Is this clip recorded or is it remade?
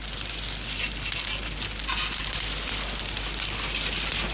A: recorded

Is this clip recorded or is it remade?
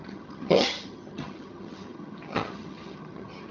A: remade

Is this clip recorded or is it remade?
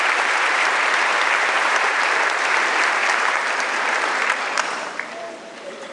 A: remade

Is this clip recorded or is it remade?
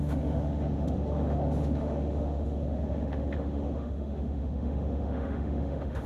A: remade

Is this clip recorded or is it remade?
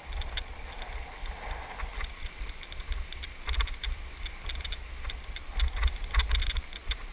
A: recorded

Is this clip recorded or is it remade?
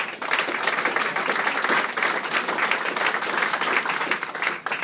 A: recorded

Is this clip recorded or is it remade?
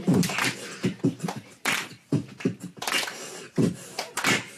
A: remade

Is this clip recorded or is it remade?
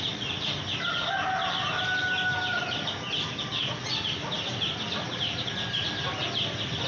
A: recorded